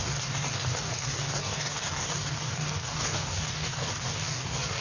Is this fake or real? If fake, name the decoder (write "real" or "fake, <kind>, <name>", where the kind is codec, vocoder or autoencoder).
fake, codec, DAC